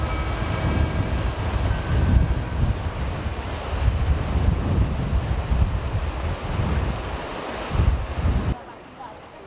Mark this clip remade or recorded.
recorded